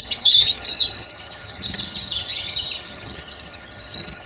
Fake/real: fake